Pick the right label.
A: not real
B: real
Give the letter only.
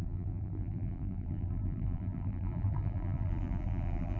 A